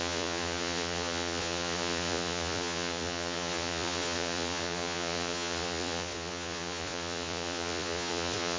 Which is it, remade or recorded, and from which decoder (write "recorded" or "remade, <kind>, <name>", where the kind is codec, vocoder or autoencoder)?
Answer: remade, vocoder, Vocos